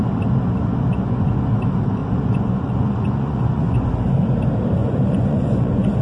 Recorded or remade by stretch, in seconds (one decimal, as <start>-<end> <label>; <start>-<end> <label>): 0.0-0.9 recorded; 0.9-1.4 remade; 1.4-2.0 recorded; 2.0-3.9 remade; 3.9-4.8 recorded; 4.8-6.0 remade